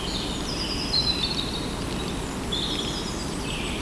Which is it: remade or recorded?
recorded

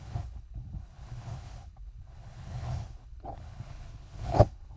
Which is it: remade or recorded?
remade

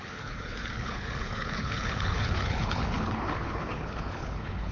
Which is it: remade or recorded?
remade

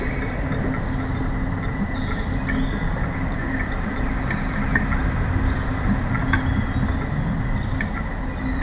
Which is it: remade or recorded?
recorded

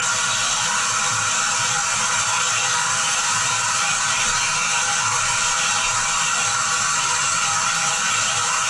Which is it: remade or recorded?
recorded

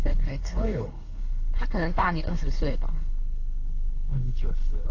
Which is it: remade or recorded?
remade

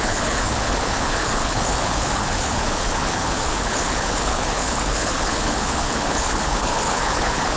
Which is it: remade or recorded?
remade